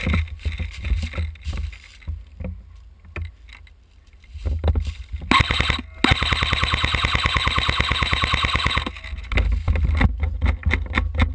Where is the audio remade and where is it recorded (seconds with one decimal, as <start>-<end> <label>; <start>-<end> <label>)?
0.0-11.3 recorded